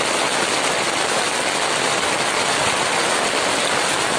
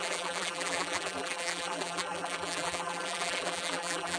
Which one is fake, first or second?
second